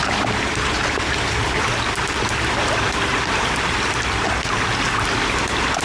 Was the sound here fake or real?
real